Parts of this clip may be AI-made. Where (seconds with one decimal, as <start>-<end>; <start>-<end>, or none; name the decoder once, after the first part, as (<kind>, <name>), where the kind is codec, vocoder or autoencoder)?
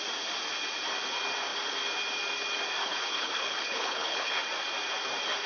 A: 2.8-4.4 (codec, HILCodec)